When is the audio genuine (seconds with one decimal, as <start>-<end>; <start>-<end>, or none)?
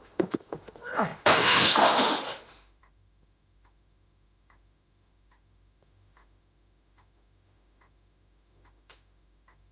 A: none